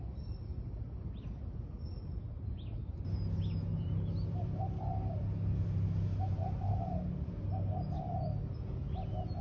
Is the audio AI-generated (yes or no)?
no